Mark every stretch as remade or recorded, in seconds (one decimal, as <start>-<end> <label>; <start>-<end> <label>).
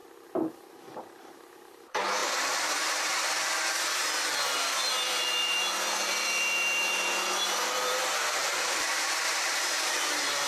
0.0-0.5 recorded; 0.5-10.5 remade